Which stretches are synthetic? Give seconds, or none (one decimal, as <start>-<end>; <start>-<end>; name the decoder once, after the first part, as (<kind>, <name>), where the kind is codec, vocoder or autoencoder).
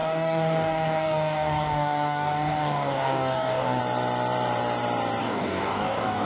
0.0-3.8 (codec, DAC); 5.2-6.3